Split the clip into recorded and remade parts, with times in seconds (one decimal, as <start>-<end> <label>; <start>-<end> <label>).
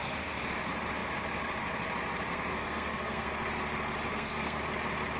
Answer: 0.0-2.3 recorded; 2.3-3.3 remade; 3.3-4.1 recorded; 4.1-4.6 remade; 4.6-5.2 recorded